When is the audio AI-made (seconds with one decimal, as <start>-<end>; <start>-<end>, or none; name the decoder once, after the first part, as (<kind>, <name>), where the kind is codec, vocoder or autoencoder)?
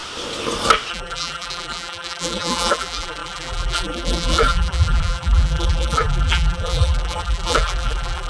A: 0.9-8.3 (vocoder, BigVGAN v2)